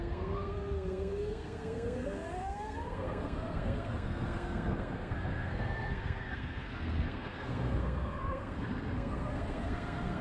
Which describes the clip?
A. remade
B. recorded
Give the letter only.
A